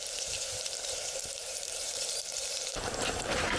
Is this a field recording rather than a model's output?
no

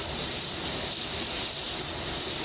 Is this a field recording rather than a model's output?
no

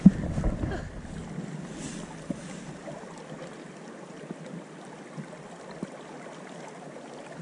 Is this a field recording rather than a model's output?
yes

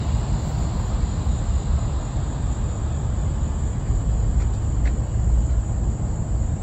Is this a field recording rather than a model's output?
yes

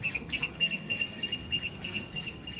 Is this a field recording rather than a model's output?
no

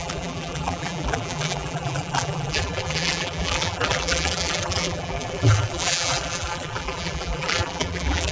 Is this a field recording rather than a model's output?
no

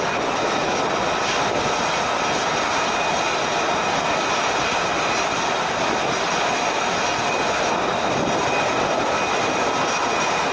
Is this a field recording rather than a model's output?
yes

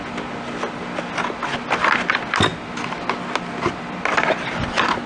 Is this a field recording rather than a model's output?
yes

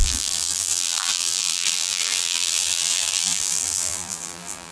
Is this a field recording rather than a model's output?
no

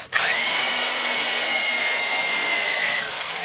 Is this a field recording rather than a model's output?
no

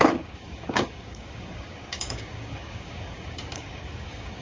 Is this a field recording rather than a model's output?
no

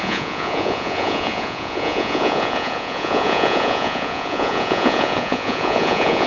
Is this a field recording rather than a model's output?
no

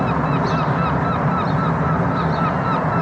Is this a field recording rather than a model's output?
yes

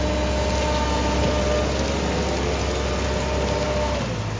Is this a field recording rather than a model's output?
yes